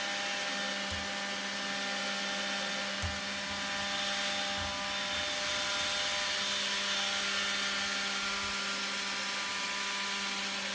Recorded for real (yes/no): yes